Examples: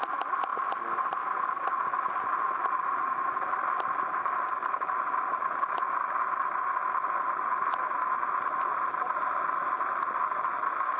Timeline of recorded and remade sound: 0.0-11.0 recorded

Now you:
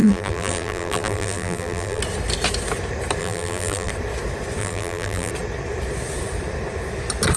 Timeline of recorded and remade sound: 0.0-2.0 remade; 2.0-3.2 recorded; 3.2-3.9 remade; 3.9-4.6 recorded; 4.6-5.3 remade; 5.3-7.4 recorded